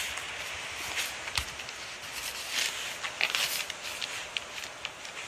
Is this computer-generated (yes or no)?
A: no